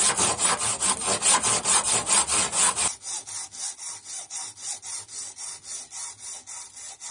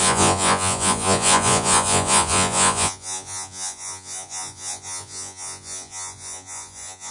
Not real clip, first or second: second